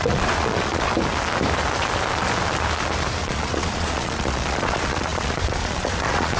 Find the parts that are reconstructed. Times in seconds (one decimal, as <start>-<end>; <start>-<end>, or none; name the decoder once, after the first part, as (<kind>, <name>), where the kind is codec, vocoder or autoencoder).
0.0-0.9 (vocoder, Vocos); 3.2-6.4